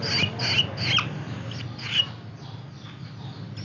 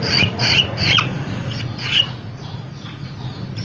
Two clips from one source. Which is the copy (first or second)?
second